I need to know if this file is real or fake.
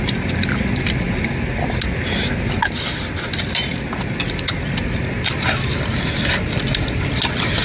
real